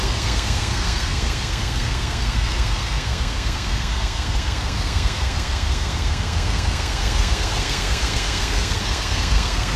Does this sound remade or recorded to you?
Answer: remade